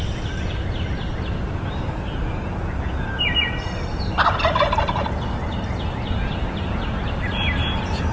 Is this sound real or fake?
real